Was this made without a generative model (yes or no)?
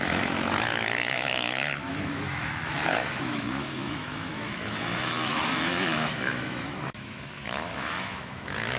no